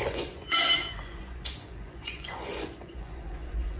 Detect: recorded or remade remade